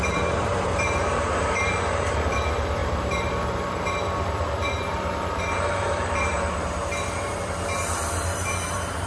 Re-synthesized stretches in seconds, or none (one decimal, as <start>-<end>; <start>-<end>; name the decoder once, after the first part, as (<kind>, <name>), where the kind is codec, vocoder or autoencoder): 0.0-9.1 (vocoder, BigVGAN v2)